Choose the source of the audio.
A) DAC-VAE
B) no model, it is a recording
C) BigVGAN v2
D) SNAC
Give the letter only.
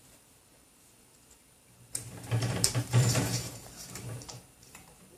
C